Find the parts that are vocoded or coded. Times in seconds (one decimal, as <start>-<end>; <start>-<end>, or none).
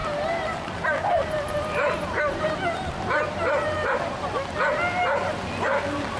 0.0-2.5